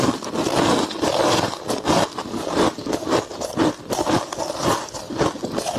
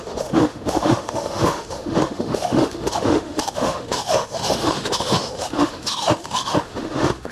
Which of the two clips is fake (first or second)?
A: second